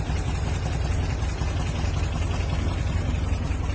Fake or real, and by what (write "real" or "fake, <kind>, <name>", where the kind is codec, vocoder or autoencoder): real